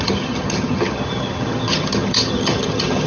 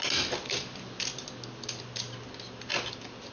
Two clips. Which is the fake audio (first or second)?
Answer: first